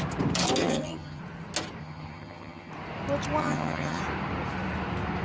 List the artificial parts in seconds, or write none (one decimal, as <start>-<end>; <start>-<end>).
0.6-1.2; 1.8-2.7; 3.4-4.0